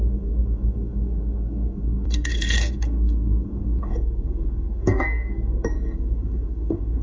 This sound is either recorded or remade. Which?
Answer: remade